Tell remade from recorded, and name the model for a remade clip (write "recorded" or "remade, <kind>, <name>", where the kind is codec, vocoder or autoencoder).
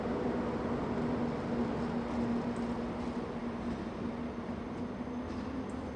recorded